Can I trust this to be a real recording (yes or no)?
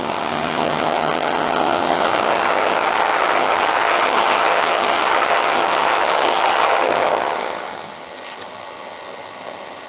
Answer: no